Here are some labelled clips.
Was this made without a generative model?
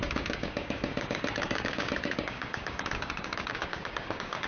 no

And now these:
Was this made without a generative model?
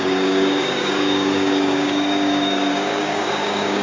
no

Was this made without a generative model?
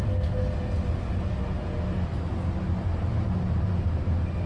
yes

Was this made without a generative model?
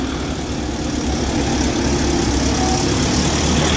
yes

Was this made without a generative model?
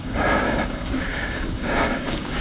no